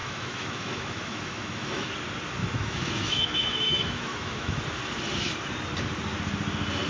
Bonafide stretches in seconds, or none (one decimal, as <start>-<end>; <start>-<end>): 1.9-2.4; 4.6-6.9